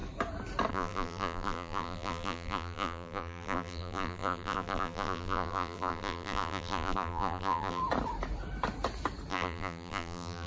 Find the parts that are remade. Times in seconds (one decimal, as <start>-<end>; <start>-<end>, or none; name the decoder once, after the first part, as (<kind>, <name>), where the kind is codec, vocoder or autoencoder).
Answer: 0.7-7.8 (vocoder, BigVGAN v2); 9.3-10.5